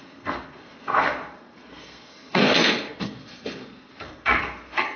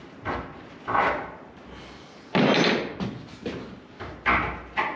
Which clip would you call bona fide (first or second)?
second